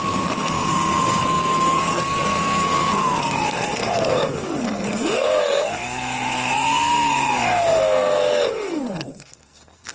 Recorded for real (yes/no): no